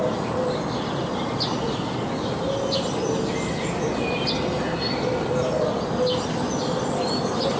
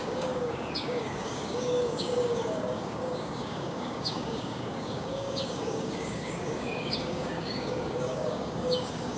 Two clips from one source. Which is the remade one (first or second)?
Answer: second